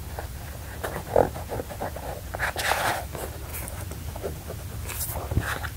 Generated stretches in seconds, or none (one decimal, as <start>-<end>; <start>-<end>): none